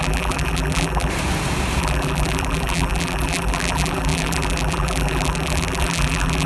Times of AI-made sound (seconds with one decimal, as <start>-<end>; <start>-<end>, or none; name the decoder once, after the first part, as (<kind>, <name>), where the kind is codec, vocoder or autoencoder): 0.0-1.1 (vocoder, BigVGAN v2); 1.8-6.5